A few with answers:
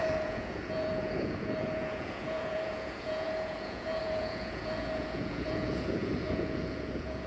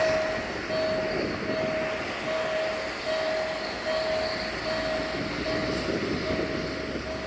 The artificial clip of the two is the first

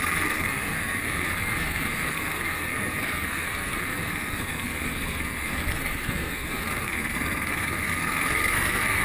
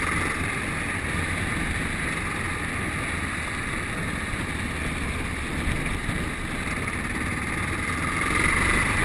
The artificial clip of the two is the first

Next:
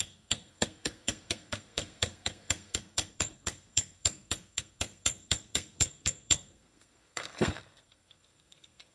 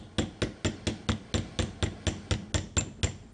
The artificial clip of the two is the first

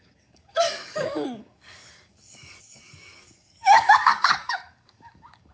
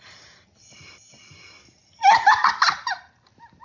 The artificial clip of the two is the first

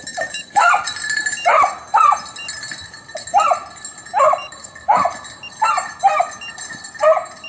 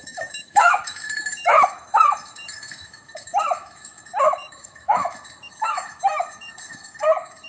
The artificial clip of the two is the second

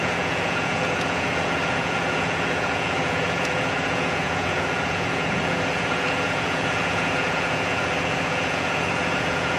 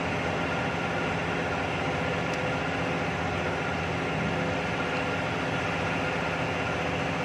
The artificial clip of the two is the first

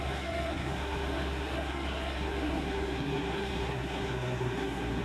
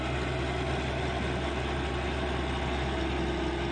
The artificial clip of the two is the first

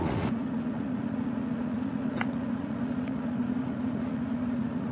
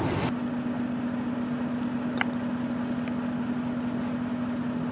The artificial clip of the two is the first